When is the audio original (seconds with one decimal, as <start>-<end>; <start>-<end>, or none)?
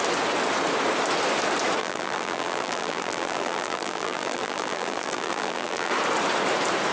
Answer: 0.0-1.8; 5.9-6.9